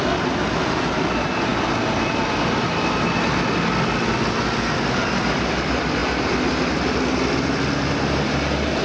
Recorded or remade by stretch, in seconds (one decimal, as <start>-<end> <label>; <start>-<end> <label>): 0.0-8.8 recorded